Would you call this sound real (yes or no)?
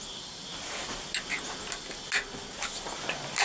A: yes